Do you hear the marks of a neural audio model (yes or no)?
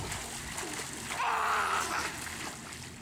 no